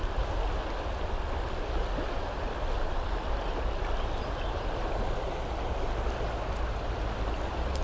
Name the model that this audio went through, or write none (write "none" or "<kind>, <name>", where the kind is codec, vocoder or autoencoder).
none